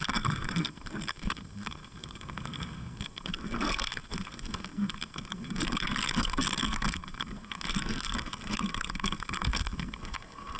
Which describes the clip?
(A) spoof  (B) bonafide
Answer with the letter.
A